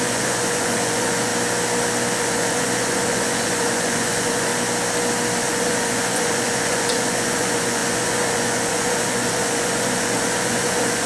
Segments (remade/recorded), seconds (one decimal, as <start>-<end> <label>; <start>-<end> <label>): 0.0-1.3 remade; 1.3-2.1 recorded; 2.1-4.5 remade; 4.5-5.4 recorded; 5.4-11.1 remade